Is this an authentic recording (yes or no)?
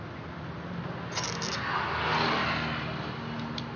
yes